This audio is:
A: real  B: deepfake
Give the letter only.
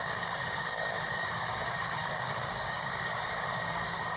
B